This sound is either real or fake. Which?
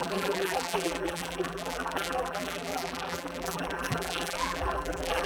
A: fake